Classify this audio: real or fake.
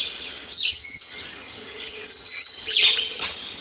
fake